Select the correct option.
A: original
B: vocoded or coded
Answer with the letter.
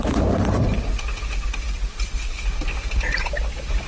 A